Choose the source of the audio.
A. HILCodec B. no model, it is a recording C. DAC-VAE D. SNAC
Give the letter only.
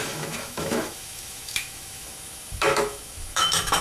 C